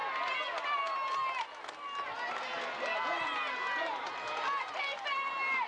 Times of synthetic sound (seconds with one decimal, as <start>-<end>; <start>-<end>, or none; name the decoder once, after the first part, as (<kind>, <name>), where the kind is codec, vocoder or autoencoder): none